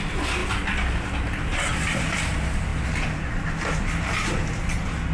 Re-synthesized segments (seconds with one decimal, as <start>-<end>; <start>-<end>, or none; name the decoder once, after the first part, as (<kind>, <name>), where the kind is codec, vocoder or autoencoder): none